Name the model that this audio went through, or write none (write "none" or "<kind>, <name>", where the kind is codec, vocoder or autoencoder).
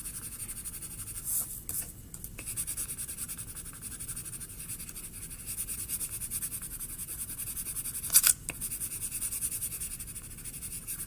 none